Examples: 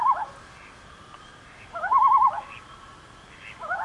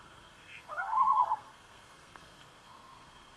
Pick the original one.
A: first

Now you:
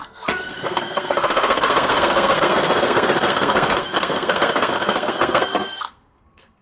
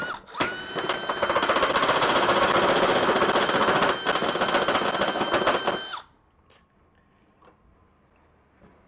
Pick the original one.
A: second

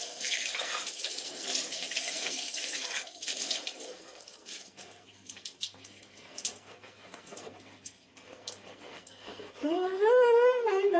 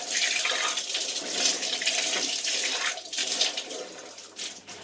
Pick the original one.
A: second